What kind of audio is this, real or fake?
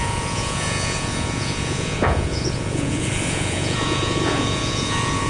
fake